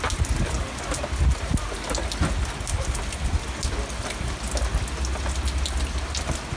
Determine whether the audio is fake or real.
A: real